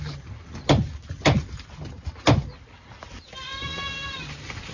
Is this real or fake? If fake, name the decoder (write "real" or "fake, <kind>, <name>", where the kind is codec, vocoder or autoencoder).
real